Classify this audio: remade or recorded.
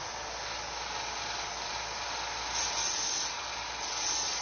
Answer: recorded